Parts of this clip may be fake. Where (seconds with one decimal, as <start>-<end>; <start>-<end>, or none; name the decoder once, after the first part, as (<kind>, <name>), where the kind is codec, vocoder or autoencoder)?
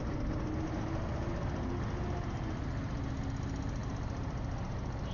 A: none